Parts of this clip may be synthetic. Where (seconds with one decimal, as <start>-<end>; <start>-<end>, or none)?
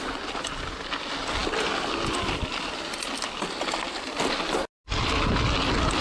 none